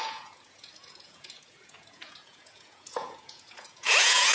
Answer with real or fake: fake